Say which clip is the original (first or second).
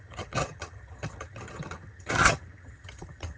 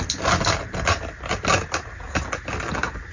second